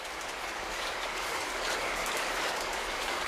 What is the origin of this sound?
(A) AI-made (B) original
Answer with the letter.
A